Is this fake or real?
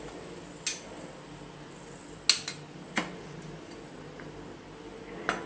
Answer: real